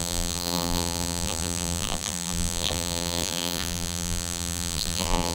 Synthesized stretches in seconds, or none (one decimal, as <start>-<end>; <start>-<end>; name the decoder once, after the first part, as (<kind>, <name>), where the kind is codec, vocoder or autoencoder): 0.0-5.3 (vocoder, BigVGAN v2)